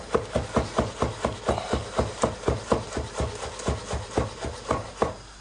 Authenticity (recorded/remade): recorded